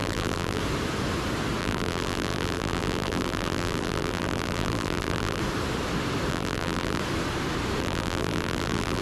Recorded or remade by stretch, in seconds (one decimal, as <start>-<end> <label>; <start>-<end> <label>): 0.0-0.6 remade; 0.6-1.6 recorded; 1.6-5.4 remade; 5.4-6.3 recorded; 6.3-7.0 remade; 7.0-7.8 recorded; 7.8-9.0 remade